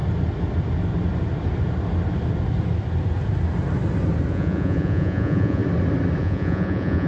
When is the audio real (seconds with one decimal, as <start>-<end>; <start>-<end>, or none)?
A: 0.0-4.3; 5.6-6.2